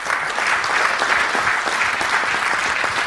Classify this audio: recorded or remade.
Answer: recorded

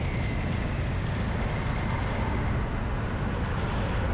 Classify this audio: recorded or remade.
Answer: recorded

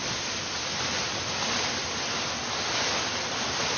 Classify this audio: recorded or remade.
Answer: recorded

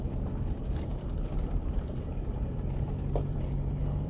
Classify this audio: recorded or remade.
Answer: remade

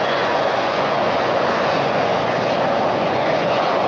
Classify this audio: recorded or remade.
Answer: remade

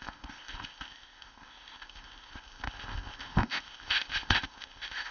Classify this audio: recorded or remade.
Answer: remade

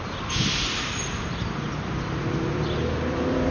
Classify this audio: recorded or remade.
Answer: recorded